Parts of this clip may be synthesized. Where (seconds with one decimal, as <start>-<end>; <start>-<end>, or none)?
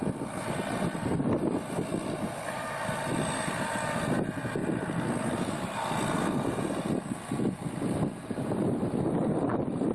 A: none